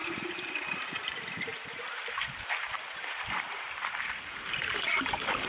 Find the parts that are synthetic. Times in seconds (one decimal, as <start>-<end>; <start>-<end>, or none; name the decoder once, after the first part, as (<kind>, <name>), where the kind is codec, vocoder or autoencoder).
0.0-5.5 (vocoder, BigVGAN v2)